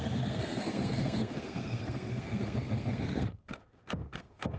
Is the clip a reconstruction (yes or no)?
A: yes